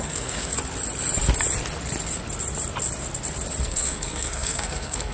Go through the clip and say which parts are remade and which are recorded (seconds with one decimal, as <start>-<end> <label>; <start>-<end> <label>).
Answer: 0.0-0.5 remade; 0.5-3.6 recorded; 3.6-5.1 remade